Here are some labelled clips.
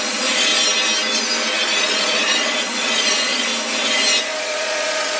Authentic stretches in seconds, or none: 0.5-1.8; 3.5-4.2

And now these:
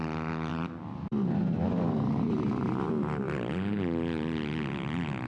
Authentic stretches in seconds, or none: 0.0-0.5; 2.9-5.3

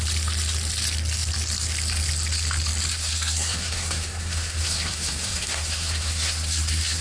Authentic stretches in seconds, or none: 0.0-2.9

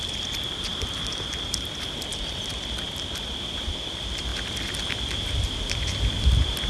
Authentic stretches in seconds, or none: 4.3-5.4

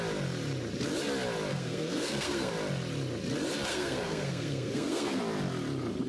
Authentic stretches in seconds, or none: 0.0-1.5; 2.5-3.7; 5.2-6.1

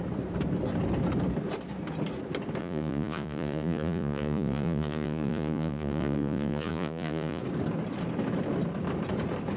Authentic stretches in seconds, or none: 0.0-2.6; 7.4-9.6

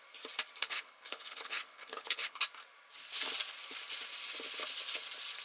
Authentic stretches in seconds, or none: 0.0-0.6; 2.4-5.4

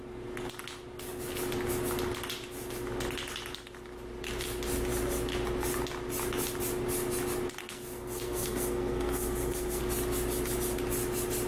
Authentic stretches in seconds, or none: 0.0-7.6; 9.8-11.5